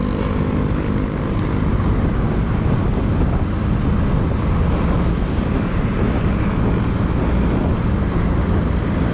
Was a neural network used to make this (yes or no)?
no